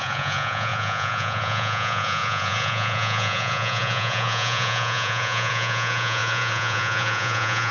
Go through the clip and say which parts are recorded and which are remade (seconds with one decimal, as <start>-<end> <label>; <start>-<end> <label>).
0.0-7.7 remade